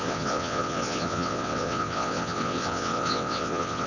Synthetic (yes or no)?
yes